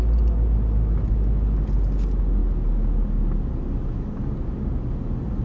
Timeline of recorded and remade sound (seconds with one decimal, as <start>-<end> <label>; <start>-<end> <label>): 0.0-5.4 recorded